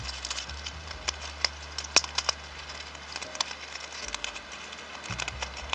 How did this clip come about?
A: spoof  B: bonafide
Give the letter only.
B